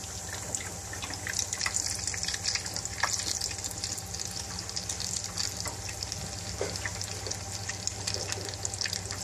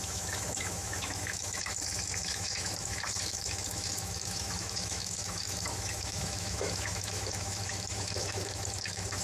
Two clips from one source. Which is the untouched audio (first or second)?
first